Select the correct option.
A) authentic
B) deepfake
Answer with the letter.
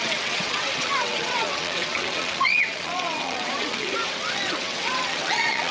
B